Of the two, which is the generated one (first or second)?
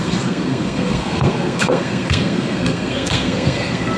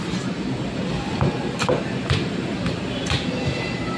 first